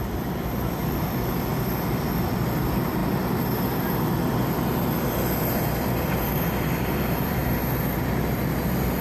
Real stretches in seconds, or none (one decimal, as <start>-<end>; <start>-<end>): 7.4-8.1